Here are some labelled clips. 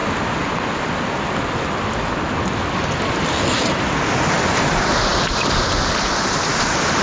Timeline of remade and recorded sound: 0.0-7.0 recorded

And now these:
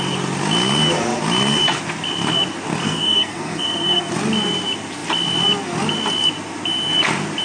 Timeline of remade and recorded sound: 0.0-2.8 recorded; 2.8-4.1 remade; 4.1-7.4 recorded